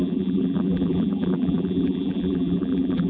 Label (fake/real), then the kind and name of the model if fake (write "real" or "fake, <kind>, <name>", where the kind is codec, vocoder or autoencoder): fake, vocoder, BigVGAN v2